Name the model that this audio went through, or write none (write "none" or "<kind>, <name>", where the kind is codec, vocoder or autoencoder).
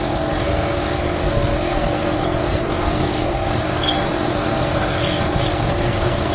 codec, SNAC